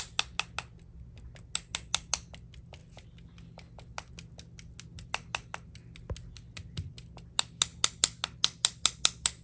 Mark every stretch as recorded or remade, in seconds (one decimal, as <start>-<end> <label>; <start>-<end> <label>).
0.0-9.4 recorded